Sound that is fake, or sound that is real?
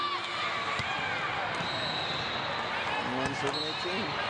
real